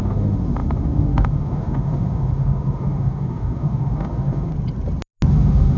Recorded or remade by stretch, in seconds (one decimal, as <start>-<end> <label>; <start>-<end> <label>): 0.0-4.5 remade; 4.5-5.3 recorded; 5.3-5.8 remade